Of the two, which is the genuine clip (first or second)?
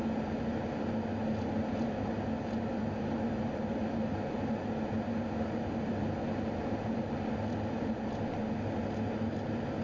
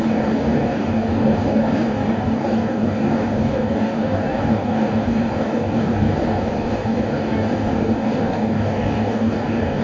first